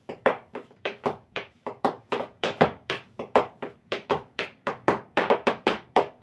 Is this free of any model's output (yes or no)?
no